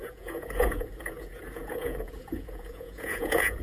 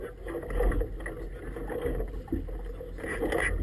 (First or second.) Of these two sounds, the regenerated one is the first